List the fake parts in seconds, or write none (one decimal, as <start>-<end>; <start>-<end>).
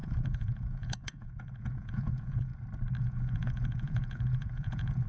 0.0-2.5; 3.0-5.1